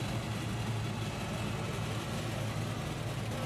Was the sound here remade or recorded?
recorded